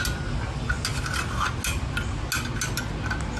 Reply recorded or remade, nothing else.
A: recorded